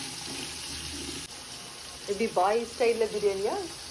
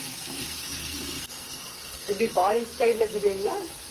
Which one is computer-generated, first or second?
second